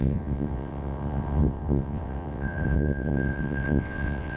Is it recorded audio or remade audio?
remade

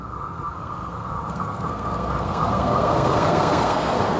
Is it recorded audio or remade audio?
remade